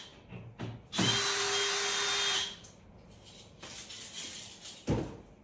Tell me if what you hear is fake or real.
real